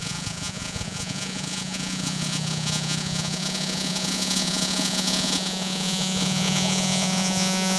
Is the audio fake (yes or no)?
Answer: yes